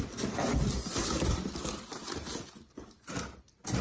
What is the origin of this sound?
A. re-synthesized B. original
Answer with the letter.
B